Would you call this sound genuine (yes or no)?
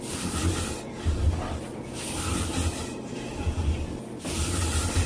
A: yes